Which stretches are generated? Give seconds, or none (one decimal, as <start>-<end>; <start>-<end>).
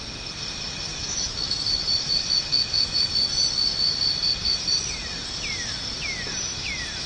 0.9-1.6; 2.5-3.1